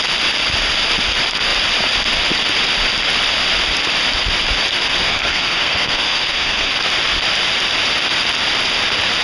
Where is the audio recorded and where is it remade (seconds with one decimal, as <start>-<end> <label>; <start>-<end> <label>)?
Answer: 0.0-5.1 recorded; 5.1-6.7 remade; 6.7-9.2 recorded